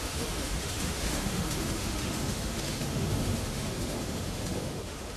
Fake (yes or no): yes